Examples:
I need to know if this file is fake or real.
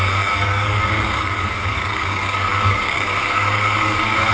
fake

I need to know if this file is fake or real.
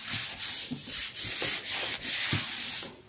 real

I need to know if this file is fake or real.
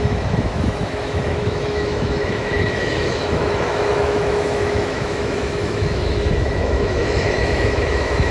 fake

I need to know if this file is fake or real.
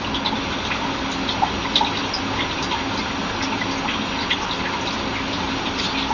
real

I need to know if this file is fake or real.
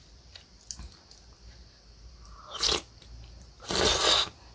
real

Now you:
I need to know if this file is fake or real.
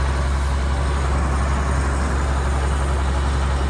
real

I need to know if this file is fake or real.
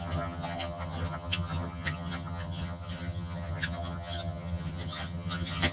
fake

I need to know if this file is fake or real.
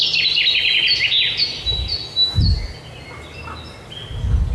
real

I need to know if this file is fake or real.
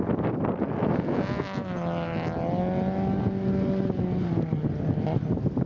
real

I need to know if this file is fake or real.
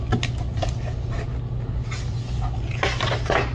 real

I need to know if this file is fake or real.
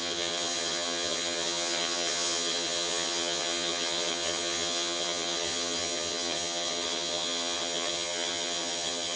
fake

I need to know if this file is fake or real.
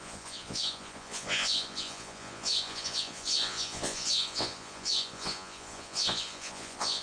fake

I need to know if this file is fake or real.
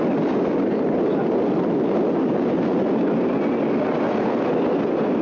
real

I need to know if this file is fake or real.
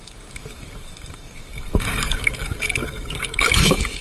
fake